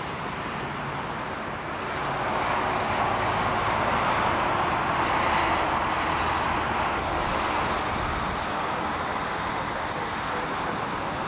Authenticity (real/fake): real